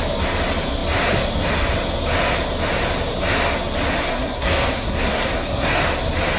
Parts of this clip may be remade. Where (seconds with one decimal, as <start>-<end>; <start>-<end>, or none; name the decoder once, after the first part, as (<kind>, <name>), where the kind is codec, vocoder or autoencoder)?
4.1-5.8 (codec, SNAC)